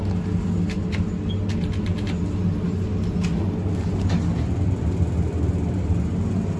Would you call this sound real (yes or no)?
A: yes